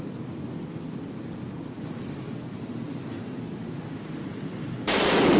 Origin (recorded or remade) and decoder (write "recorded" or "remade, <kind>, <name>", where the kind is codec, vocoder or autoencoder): recorded